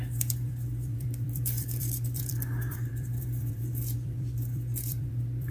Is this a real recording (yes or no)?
no